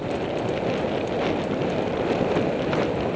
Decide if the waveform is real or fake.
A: real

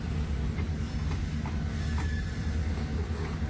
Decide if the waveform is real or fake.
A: real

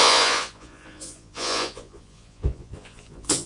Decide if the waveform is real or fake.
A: fake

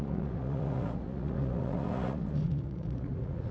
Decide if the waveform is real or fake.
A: fake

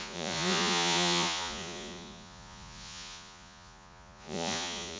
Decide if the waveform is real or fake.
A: fake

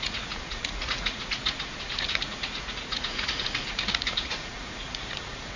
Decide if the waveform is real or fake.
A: fake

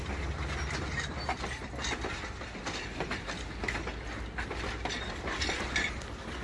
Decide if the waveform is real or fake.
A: real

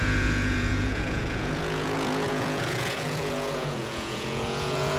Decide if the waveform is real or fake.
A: fake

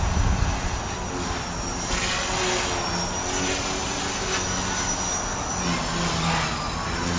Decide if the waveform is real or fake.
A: real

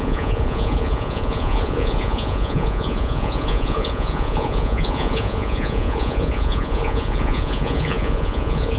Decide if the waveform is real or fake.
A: fake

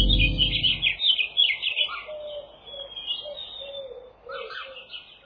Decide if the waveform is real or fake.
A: real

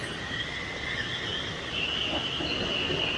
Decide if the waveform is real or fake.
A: real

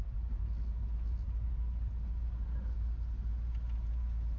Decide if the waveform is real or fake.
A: real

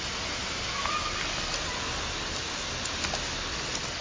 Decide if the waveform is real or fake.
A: real